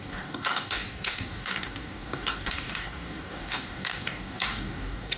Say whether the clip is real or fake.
fake